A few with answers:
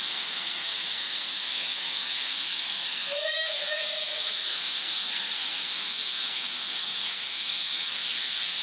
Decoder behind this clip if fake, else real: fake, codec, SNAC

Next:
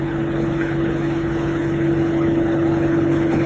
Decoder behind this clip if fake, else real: fake, codec, HILCodec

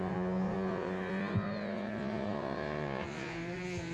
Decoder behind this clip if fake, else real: fake, vocoder, Vocos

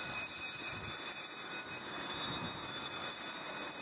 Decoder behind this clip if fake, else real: real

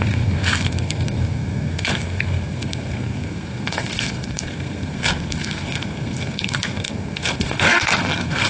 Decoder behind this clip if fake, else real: fake, codec, SNAC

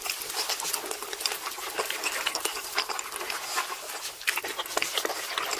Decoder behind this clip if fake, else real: real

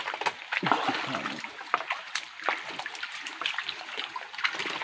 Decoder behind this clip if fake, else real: real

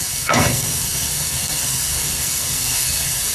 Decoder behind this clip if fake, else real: fake, codec, SNAC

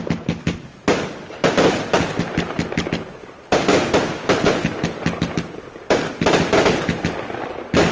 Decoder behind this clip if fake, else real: real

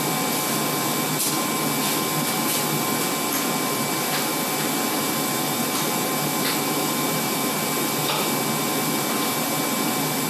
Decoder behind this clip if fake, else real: real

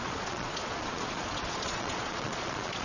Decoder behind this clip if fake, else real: fake, vocoder, Vocos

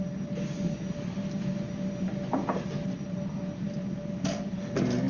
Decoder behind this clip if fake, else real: real